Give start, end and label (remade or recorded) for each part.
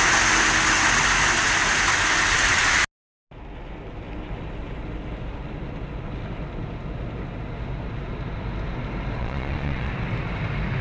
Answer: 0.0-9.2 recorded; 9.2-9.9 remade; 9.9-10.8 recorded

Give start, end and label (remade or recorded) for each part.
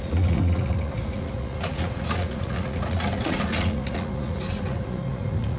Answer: 0.0-5.6 remade